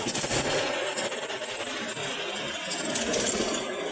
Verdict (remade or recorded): recorded